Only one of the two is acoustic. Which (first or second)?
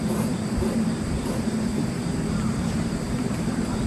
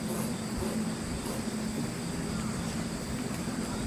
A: second